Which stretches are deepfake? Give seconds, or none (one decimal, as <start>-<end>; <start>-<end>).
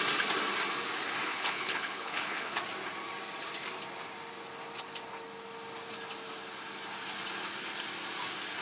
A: 1.3-2.6